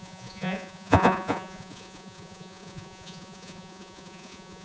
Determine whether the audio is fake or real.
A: fake